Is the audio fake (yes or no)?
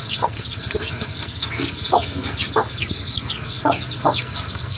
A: yes